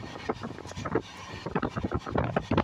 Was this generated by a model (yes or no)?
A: no